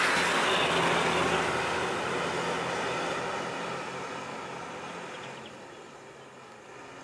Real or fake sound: real